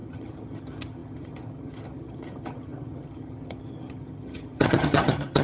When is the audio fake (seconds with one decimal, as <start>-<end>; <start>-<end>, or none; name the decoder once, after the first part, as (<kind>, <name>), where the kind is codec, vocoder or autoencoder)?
0.0-5.4 (vocoder, HiFi-GAN)